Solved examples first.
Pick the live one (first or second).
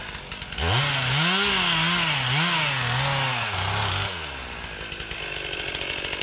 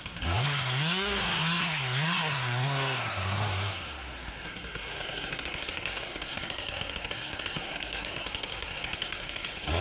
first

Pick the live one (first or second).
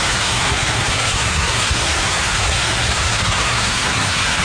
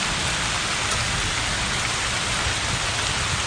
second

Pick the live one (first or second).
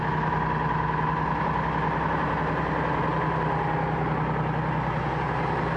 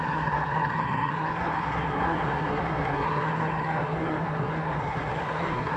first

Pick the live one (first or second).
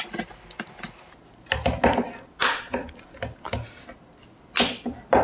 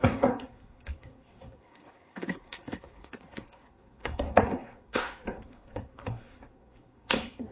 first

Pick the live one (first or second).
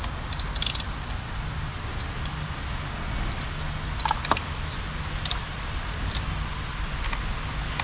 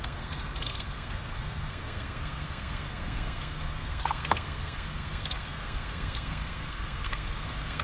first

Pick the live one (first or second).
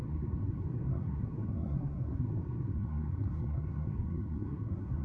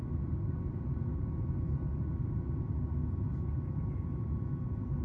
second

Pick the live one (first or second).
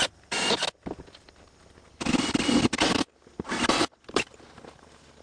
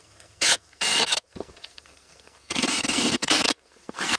first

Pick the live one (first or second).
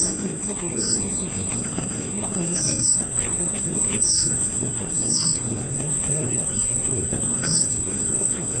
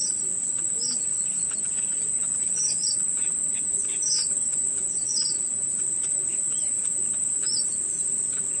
second